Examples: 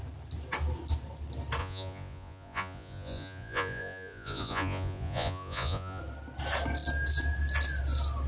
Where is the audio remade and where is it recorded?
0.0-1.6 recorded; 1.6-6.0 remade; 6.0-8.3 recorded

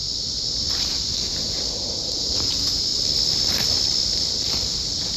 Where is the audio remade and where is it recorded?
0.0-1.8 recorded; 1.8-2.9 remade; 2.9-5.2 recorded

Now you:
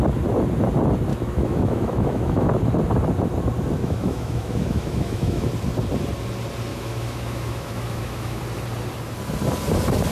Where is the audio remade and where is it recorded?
0.0-1.1 recorded; 1.1-2.5 remade; 2.5-3.8 recorded; 3.8-5.5 remade; 5.5-6.7 recorded; 6.7-8.4 remade; 8.4-10.1 recorded

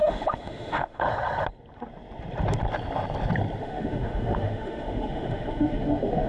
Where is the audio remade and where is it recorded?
0.0-1.1 remade; 1.1-3.6 recorded; 3.6-6.3 remade

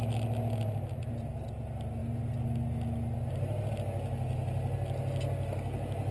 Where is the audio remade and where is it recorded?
0.0-6.1 recorded